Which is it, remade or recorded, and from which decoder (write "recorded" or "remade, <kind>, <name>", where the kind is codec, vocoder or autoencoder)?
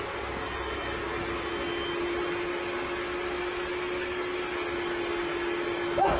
recorded